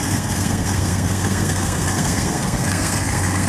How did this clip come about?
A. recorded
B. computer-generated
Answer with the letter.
B